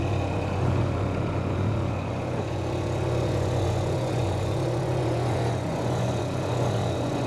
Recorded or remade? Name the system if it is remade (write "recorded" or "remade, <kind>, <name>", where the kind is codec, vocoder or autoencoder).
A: remade, vocoder, Vocos